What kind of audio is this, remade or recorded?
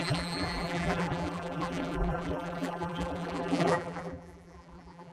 remade